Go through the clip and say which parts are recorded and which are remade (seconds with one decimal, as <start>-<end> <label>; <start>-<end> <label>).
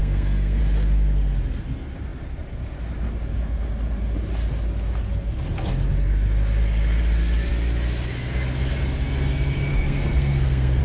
0.0-0.6 remade; 0.6-9.7 recorded; 9.7-10.8 remade